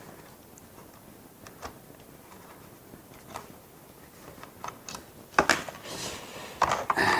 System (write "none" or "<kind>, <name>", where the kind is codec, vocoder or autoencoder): none